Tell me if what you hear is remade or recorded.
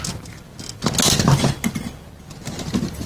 recorded